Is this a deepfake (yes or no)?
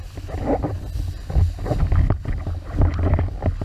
no